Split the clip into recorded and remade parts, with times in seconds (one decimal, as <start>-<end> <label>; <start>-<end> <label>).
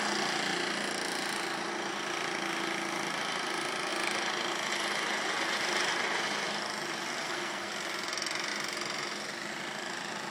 0.0-7.2 recorded; 7.2-7.7 remade; 7.7-10.3 recorded